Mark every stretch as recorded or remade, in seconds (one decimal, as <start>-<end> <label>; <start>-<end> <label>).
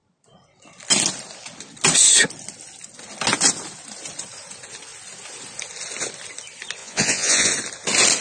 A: 0.0-6.8 recorded; 6.8-7.5 remade; 7.5-8.2 recorded